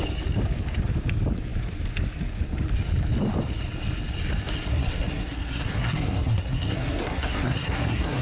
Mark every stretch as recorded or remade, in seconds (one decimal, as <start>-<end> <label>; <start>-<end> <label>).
0.0-4.7 recorded; 4.7-8.2 remade